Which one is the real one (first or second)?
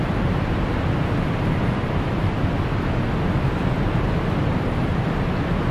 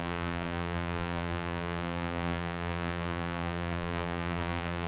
first